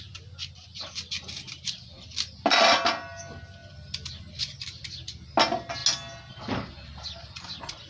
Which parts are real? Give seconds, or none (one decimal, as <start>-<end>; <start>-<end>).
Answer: 0.0-7.9